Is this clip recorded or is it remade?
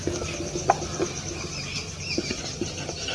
remade